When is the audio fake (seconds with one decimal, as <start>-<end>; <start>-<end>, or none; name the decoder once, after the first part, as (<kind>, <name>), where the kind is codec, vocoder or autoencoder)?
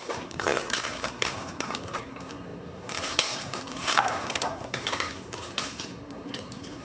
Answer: 0.0-6.8 (codec, SNAC)